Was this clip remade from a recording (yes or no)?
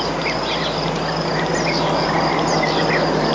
no